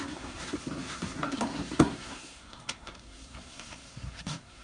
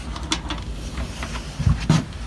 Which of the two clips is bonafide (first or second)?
second